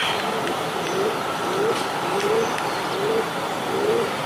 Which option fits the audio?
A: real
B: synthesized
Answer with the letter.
B